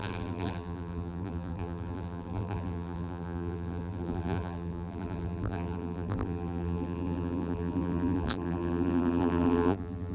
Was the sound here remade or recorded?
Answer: remade